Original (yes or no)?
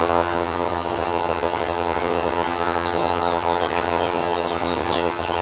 no